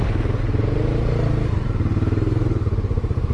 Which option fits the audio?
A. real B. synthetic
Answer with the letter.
A